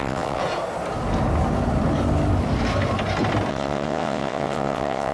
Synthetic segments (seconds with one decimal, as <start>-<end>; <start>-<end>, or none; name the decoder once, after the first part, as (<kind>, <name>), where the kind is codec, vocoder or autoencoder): 0.0-0.4 (vocoder, WaveNeXt); 3.5-5.1